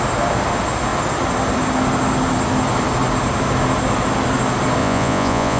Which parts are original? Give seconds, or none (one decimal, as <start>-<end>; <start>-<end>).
0.0-4.8